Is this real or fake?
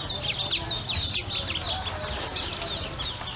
real